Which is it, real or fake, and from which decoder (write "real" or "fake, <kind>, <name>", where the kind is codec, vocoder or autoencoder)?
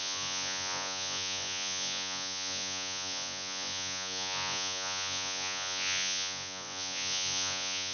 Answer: fake, vocoder, Vocos